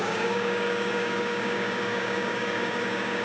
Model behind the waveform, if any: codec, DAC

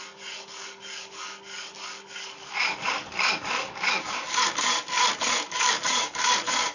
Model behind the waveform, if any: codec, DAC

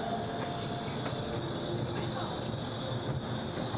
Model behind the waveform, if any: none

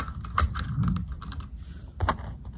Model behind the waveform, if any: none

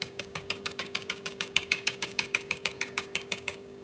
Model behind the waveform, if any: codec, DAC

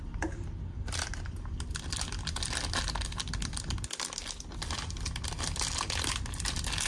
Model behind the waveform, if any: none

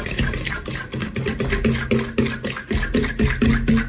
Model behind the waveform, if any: none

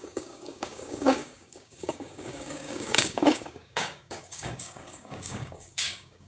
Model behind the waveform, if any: codec, DAC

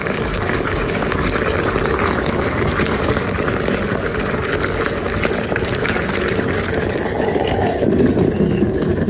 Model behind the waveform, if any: codec, DAC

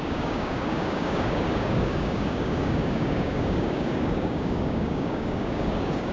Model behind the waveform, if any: codec, DAC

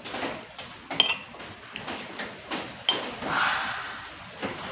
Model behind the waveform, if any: none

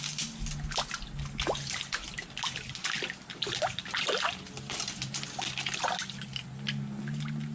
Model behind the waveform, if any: none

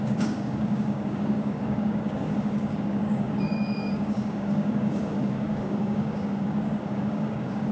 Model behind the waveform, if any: codec, DAC